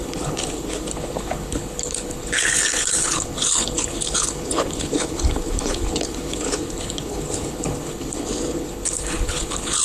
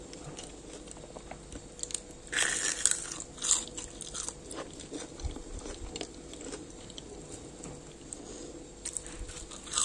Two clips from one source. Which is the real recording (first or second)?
second